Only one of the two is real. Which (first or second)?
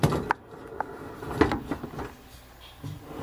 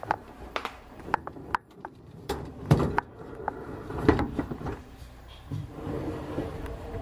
first